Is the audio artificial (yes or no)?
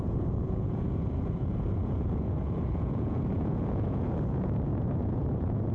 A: yes